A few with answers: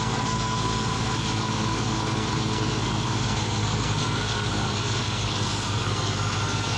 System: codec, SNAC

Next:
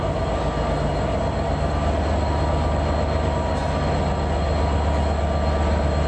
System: none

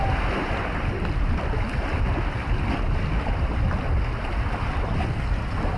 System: none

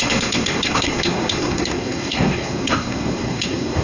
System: codec, SNAC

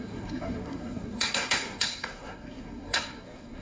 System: codec, SNAC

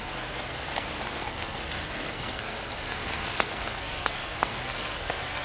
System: codec, SNAC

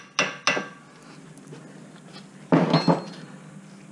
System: none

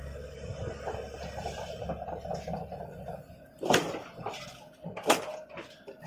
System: none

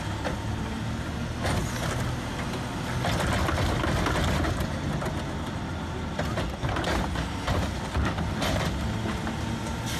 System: none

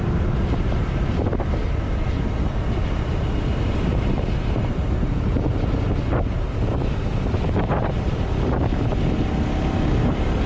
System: none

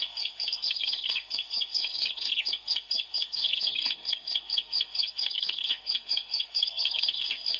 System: codec, SNAC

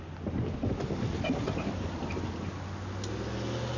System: none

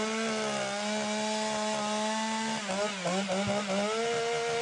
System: none